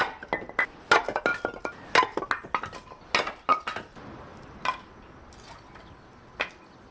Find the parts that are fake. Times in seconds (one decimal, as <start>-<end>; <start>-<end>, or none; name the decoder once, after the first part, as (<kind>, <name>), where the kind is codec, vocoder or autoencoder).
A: none